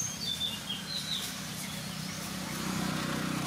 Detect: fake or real real